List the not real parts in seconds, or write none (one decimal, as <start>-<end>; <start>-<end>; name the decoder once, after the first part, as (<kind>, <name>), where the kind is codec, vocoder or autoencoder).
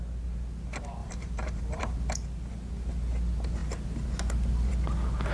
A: 1.0-1.9 (vocoder, BigVGAN v2)